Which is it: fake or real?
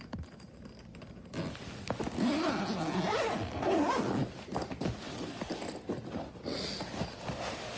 real